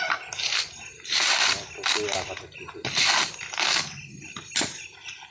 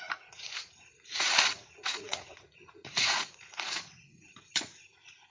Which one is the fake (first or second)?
second